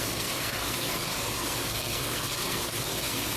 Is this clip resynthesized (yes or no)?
yes